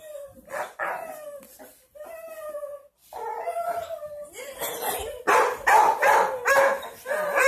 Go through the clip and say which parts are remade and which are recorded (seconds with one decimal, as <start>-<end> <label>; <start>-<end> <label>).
0.0-3.0 recorded; 3.0-4.0 remade; 4.0-7.5 recorded